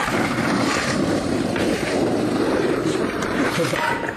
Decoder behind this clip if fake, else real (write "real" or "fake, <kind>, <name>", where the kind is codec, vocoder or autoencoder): fake, vocoder, BigVGAN v2